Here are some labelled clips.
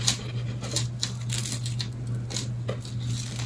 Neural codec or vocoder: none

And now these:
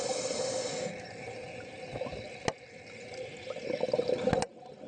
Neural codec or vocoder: none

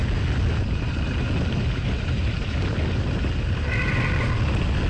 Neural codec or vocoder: none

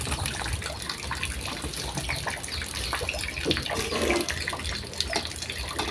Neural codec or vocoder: none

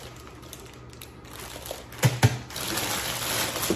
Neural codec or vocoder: none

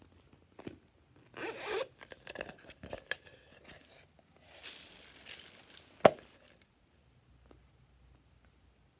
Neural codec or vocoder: none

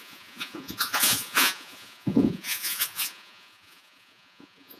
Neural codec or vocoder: vocoder, Vocos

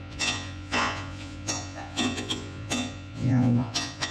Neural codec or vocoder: vocoder, Vocos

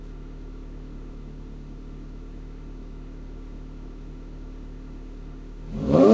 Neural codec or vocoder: autoencoder, DAC-VAE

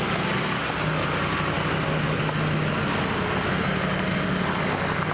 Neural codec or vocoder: none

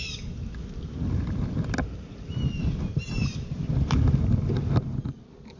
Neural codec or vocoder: none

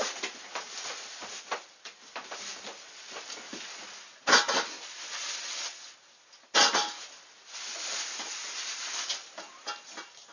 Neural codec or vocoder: none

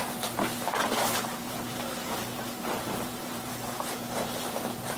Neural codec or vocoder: vocoder, BigVGAN v2